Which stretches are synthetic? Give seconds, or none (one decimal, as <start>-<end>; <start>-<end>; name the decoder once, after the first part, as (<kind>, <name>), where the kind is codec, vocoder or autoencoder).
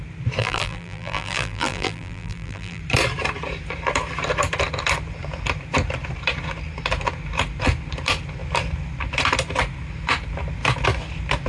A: 0.4-2.8 (vocoder, BigVGAN v2)